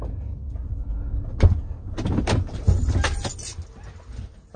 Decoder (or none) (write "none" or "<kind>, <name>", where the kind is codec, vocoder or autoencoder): none